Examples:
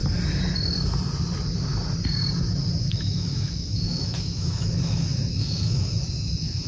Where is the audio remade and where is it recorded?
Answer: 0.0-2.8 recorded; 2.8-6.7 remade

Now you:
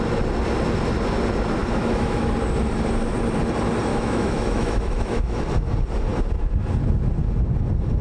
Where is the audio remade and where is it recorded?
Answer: 0.0-1.6 recorded; 1.6-2.3 remade; 2.3-3.9 recorded; 3.9-5.4 remade; 5.4-8.0 recorded

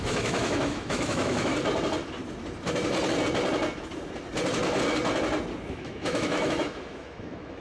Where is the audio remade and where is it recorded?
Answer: 0.0-1.5 remade; 1.5-5.7 recorded; 5.7-7.6 remade

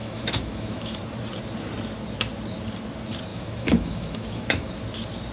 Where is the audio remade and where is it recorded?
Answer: 0.0-1.0 remade; 1.0-3.3 recorded; 3.3-4.7 remade; 4.7-5.3 recorded

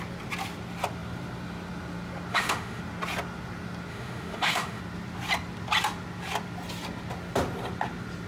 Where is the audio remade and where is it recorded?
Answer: 0.0-2.3 recorded; 2.3-2.8 remade; 2.8-3.9 recorded; 3.9-4.8 remade; 4.8-8.3 recorded

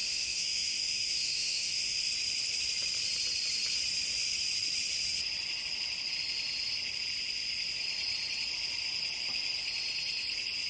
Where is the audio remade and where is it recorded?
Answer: 0.0-2.1 remade; 2.1-10.7 recorded